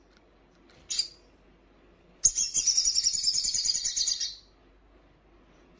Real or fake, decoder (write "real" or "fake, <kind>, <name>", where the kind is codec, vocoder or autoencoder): real